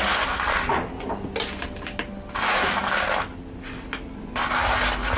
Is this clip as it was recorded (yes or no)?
yes